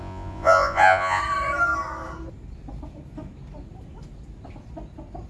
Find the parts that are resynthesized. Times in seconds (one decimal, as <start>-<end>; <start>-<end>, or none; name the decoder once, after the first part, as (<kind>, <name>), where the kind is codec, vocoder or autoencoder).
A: 0.0-1.2 (vocoder, Vocos)